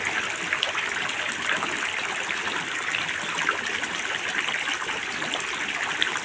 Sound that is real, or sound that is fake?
real